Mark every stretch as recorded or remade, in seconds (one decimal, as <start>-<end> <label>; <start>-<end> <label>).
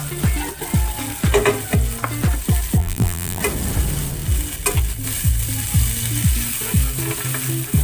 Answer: 0.0-2.8 recorded; 2.8-3.4 remade; 3.4-7.8 recorded